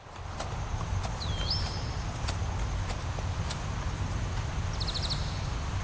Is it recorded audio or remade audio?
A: recorded